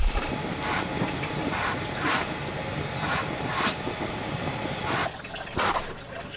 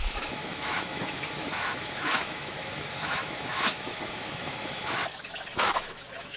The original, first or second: first